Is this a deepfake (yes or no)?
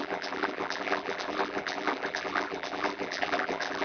yes